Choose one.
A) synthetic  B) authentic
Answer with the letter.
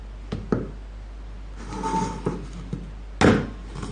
B